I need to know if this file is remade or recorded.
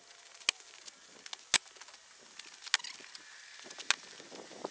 recorded